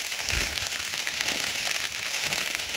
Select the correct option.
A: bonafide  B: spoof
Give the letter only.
B